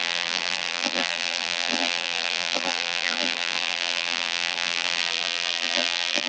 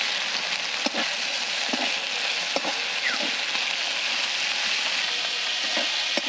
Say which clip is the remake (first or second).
first